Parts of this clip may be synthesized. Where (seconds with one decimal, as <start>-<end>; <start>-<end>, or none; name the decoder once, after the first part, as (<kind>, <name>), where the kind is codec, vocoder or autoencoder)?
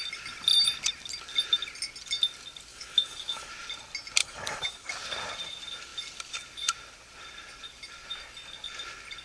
2.7-3.5 (codec, DAC); 4.2-4.9